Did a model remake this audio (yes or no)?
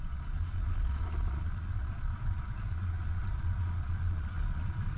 yes